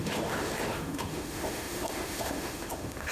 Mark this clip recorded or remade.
remade